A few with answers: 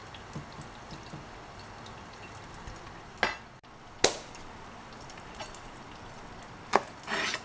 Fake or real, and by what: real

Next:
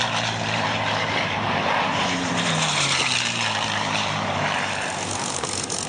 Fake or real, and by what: fake, vocoder, BigVGAN v2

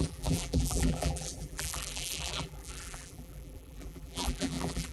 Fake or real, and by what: fake, vocoder, BigVGAN v2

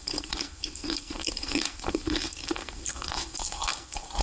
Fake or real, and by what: fake, codec, SNAC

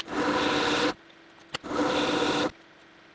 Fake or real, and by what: real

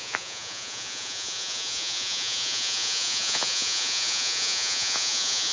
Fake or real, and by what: fake, vocoder, Vocos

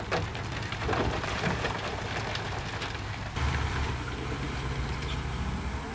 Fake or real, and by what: real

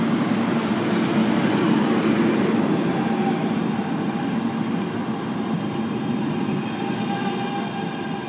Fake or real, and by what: real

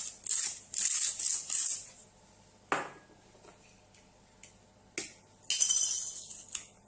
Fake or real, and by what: real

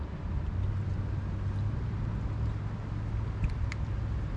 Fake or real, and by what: real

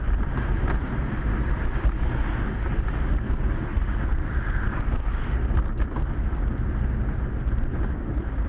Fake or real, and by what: real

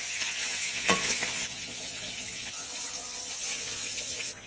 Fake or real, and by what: fake, vocoder, Vocos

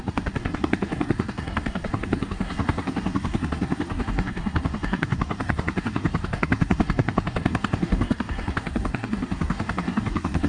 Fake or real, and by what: fake, codec, SNAC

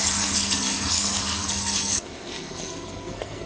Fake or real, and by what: fake, codec, SNAC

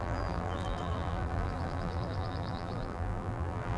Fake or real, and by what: fake, vocoder, BigVGAN v2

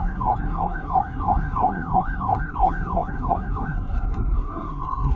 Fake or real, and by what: fake, codec, SNAC